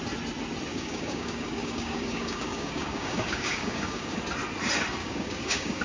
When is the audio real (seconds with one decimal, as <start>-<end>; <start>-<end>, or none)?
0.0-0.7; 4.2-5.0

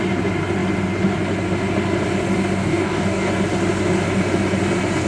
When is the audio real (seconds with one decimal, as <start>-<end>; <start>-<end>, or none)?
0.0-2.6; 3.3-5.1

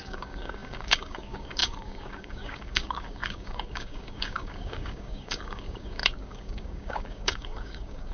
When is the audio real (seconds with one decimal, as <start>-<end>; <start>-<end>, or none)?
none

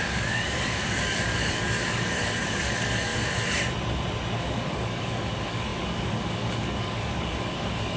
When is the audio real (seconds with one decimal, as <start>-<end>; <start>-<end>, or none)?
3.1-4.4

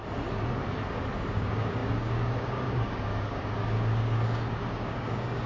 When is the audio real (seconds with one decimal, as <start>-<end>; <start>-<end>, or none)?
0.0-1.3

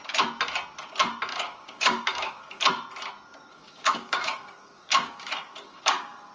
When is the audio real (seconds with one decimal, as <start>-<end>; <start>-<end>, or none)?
0.0-1.3; 2.6-3.5

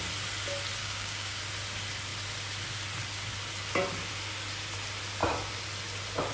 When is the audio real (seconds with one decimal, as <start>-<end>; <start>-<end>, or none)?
0.0-0.8; 1.4-6.3